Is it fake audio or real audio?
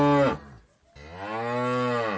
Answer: real